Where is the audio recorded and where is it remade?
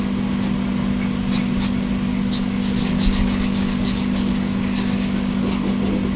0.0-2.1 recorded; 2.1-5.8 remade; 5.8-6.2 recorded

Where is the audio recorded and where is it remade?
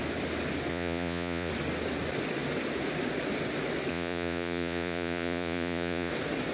0.0-0.7 recorded; 0.7-1.5 remade; 1.5-3.9 recorded; 3.9-6.1 remade; 6.1-6.5 recorded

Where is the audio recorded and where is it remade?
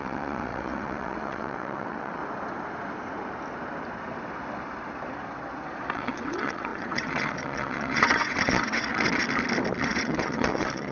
0.0-2.2 remade; 2.2-5.9 recorded; 5.9-9.2 remade; 9.2-9.8 recorded; 9.8-10.9 remade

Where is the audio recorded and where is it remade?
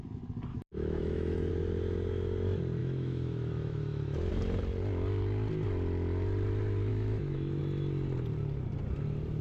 0.0-0.5 recorded; 0.5-1.5 remade; 1.5-2.8 recorded; 2.8-4.3 remade; 4.3-6.9 recorded; 6.9-7.6 remade; 7.6-9.4 recorded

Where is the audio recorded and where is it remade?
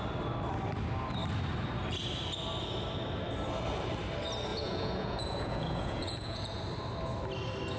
0.0-4.5 recorded; 4.5-6.6 remade; 6.6-7.8 recorded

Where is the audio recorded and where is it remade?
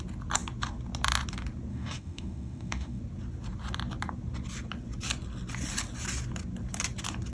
0.0-1.7 recorded; 1.7-3.0 remade; 3.0-7.3 recorded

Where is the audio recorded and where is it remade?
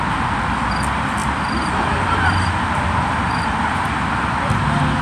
0.0-1.2 recorded; 1.2-3.9 remade; 3.9-5.0 recorded